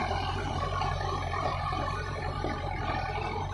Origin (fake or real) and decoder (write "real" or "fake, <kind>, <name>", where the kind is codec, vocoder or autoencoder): fake, vocoder, BigVGAN v2